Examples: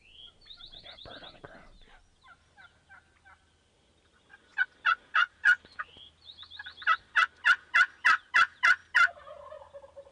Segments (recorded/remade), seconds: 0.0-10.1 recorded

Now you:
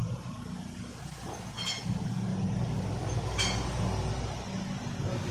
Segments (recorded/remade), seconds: 0.0-5.3 recorded

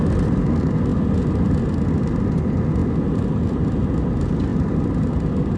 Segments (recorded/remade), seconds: 0.0-5.6 recorded

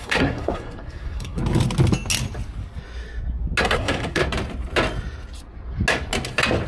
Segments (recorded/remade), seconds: 0.0-1.4 remade; 1.4-3.6 recorded; 3.6-4.2 remade; 4.2-6.7 recorded

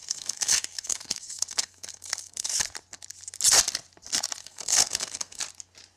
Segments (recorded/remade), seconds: 0.0-2.6 remade; 2.6-4.4 recorded; 4.4-5.4 remade; 5.4-6.0 recorded